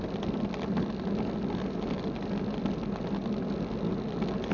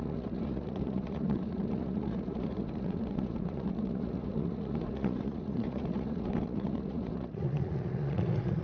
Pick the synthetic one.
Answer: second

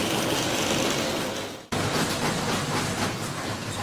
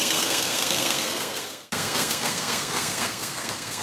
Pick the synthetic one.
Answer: second